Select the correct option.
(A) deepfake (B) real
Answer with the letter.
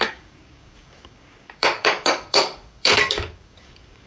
A